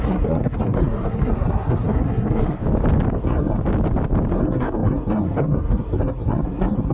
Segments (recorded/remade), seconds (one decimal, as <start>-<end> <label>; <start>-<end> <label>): 0.0-2.6 remade; 2.6-3.2 recorded; 3.2-3.6 remade; 3.6-4.3 recorded; 4.3-6.9 remade